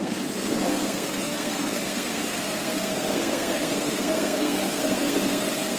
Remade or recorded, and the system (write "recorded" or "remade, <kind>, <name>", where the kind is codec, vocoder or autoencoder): remade, codec, SNAC